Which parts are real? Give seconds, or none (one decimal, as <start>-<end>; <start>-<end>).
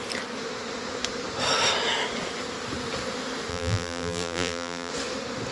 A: 0.0-3.5; 4.9-5.5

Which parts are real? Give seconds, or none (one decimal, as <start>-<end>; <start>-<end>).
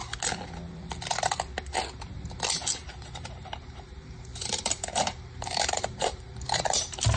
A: 0.0-2.9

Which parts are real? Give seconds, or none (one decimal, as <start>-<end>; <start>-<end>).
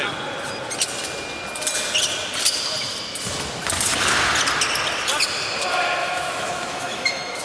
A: 0.0-6.0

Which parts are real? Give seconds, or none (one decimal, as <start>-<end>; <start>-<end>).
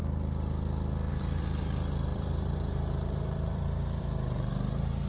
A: 0.0-1.1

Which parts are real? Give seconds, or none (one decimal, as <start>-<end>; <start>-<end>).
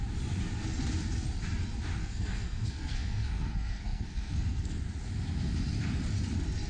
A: 0.0-2.0; 4.8-6.7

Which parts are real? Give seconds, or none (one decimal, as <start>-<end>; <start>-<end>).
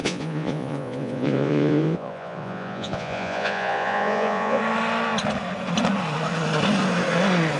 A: 4.6-7.6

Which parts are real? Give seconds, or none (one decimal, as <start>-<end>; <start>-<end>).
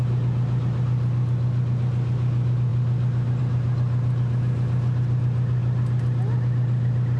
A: 0.0-7.2